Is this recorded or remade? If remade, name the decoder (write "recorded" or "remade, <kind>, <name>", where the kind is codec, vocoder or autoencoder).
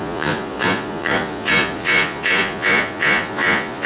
remade, vocoder, Vocos